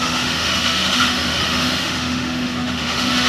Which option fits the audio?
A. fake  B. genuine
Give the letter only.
A